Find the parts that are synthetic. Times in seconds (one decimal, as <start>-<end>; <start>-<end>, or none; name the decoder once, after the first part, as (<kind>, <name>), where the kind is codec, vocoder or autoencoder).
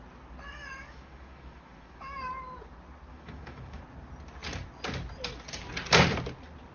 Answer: 0.6-2.2 (autoencoder, DAC-VAE); 3.1-3.8